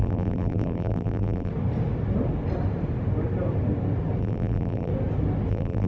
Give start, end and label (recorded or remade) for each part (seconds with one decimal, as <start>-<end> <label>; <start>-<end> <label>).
0.0-1.5 remade; 1.5-4.2 recorded; 4.2-4.9 remade; 4.9-5.5 recorded; 5.5-5.9 remade